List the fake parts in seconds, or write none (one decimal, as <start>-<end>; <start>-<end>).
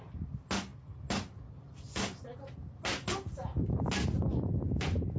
none